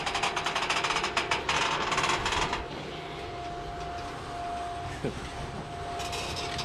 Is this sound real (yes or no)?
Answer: yes